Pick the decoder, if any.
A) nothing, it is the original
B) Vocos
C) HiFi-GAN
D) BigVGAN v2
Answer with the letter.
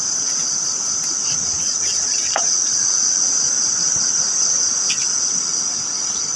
A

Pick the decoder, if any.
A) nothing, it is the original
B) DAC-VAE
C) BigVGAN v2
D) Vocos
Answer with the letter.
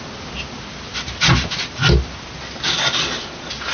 A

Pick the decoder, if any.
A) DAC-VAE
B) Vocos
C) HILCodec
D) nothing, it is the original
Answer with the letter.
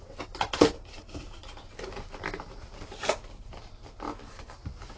D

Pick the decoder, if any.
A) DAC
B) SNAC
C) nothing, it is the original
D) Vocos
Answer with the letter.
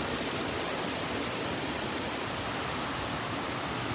C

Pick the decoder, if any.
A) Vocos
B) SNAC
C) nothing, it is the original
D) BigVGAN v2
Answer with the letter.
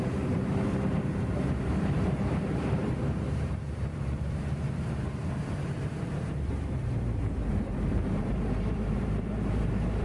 D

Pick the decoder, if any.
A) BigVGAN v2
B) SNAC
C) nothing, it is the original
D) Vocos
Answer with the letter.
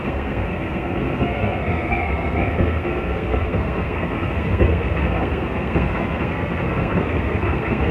B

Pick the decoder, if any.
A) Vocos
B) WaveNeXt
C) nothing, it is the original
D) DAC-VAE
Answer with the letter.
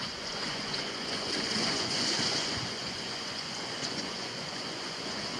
A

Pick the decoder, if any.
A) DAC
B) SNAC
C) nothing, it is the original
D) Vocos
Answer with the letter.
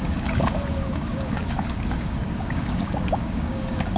A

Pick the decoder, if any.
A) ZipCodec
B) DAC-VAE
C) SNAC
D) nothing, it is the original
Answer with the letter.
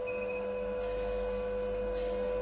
D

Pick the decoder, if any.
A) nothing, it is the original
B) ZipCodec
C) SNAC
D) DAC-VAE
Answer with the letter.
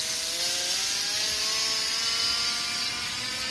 A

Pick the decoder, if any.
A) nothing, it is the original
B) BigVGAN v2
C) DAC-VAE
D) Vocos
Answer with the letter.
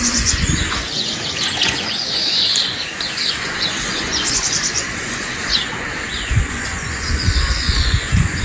D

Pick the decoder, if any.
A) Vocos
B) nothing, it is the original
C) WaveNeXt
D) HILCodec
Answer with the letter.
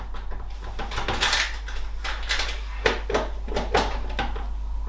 B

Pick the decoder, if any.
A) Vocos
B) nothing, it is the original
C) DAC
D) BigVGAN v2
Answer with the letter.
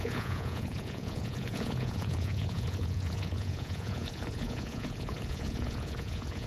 A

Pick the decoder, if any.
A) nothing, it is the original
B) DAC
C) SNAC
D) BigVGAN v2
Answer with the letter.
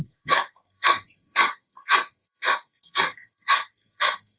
C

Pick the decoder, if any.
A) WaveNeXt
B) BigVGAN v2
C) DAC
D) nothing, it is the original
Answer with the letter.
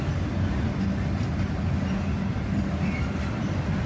D